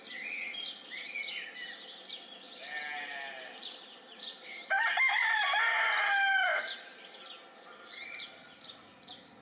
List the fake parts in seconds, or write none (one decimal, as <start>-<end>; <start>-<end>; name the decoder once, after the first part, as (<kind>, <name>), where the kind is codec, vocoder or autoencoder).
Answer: none